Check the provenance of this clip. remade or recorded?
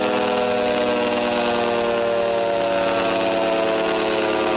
recorded